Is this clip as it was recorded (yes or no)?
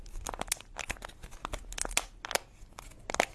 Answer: yes